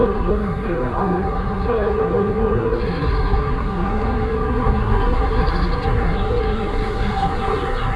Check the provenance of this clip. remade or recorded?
remade